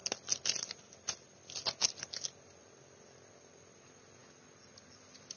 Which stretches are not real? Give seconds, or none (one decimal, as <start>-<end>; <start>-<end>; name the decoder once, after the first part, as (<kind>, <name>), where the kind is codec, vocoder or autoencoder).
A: none